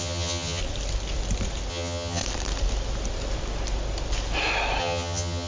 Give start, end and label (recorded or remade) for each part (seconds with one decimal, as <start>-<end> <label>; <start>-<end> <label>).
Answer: 0.0-0.6 remade; 0.6-1.7 recorded; 1.7-2.2 remade; 2.2-4.8 recorded; 4.8-5.5 remade